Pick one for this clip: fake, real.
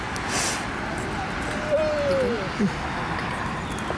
real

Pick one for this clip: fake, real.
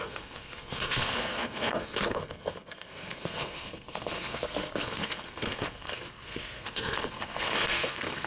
fake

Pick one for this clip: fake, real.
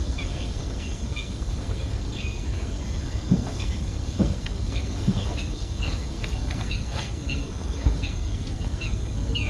fake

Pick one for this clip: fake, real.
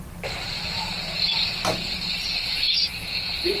real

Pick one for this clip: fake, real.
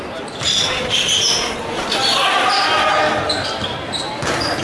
real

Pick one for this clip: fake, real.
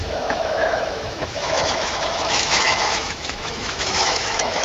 fake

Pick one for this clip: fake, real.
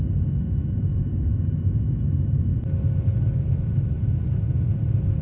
real